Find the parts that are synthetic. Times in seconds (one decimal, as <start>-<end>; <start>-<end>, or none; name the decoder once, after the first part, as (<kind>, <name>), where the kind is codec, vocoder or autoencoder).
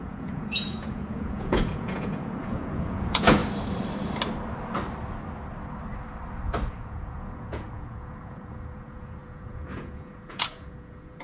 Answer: 0.0-3.4 (vocoder, Vocos); 6.7-11.2